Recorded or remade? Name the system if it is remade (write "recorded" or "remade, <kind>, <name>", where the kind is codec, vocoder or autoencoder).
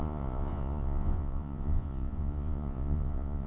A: remade, vocoder, Vocos